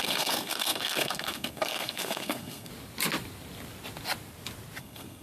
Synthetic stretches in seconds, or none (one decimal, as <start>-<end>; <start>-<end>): 0.0-2.7; 4.8-5.2